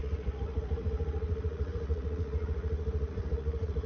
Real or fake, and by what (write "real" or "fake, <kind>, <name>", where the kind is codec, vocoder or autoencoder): fake, vocoder, Vocos